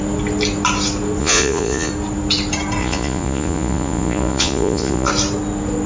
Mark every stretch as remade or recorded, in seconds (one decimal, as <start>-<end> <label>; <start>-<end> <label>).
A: 0.0-1.2 recorded; 1.2-1.9 remade; 1.9-2.8 recorded; 2.8-5.1 remade; 5.1-5.9 recorded

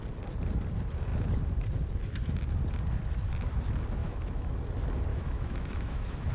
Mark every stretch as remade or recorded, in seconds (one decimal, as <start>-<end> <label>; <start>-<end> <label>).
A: 0.0-4.0 recorded; 4.0-4.5 remade; 4.5-5.1 recorded; 5.1-6.3 remade

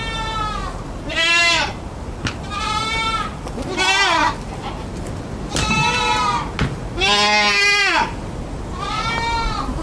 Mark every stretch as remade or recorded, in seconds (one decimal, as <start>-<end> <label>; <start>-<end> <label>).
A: 0.0-9.8 recorded

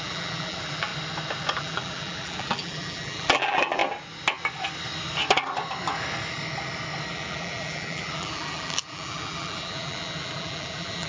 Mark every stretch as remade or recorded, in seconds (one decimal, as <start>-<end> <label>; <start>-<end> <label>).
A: 0.0-0.9 remade; 0.9-1.6 recorded; 1.6-3.8 remade; 3.8-7.1 recorded; 7.1-11.1 remade

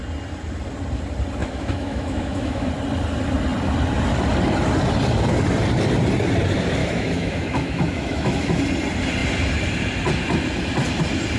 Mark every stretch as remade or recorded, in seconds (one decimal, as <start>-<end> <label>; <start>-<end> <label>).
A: 0.0-1.4 recorded; 1.4-2.7 remade; 2.7-6.8 recorded; 6.8-8.6 remade; 8.6-11.4 recorded